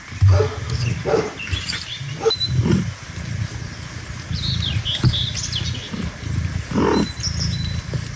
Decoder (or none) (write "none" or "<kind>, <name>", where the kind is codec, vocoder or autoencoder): none